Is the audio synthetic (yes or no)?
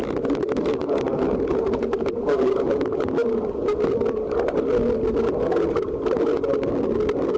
no